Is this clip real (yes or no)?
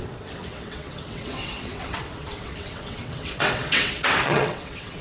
no